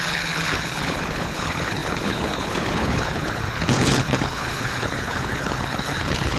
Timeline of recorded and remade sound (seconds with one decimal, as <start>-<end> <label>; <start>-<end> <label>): 0.0-6.4 remade